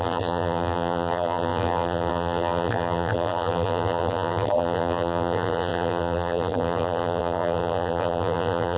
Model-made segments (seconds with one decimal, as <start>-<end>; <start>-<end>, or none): 0.0-8.8

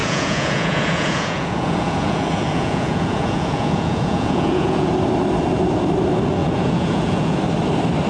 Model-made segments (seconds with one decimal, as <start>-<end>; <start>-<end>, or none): 0.0-4.9; 6.4-7.4

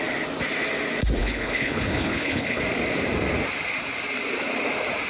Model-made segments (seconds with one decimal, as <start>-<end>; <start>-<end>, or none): 1.2-2.6

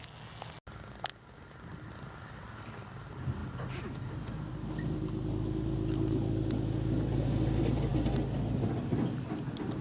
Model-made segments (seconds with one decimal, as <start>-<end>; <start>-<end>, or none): none

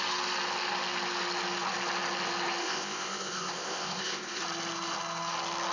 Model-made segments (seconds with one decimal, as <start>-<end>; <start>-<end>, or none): 2.6-4.4

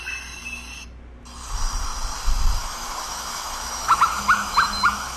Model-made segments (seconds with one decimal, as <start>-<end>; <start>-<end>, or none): 2.6-5.2